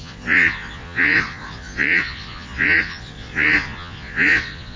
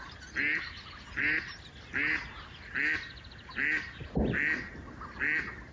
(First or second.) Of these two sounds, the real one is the second